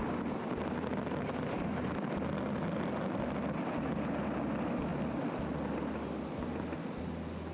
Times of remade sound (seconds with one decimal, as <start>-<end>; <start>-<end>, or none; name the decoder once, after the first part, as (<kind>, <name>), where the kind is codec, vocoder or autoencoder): 4.9-6.3 (vocoder, BigVGAN v2)